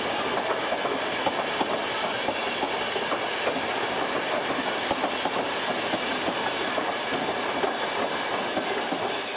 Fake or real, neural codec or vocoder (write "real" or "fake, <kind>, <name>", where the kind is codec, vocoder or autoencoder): real